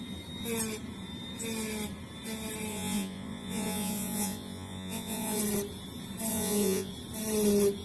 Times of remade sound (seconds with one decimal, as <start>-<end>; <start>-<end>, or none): 2.7-5.4; 6.3-6.9